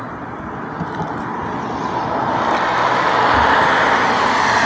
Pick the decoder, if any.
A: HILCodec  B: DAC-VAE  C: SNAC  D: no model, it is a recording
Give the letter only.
D